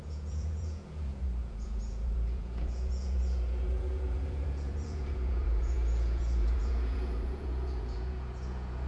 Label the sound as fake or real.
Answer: fake